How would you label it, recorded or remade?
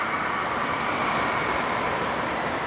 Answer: recorded